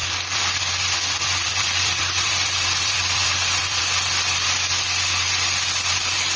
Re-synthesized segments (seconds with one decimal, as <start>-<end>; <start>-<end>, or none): 0.0-3.8